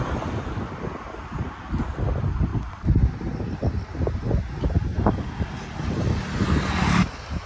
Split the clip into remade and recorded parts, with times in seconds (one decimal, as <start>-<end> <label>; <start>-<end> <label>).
0.0-7.5 recorded

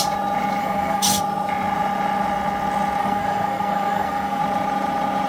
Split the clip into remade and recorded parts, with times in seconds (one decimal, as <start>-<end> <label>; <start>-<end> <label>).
0.0-0.6 recorded; 0.6-1.2 remade; 1.2-3.0 recorded; 3.0-4.4 remade; 4.4-5.3 recorded

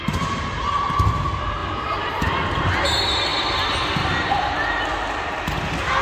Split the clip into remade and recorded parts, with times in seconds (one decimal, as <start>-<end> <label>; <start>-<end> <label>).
0.0-6.0 recorded